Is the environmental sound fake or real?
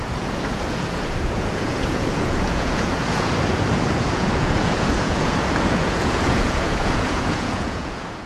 fake